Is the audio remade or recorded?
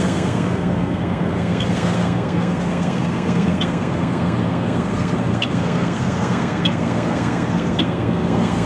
remade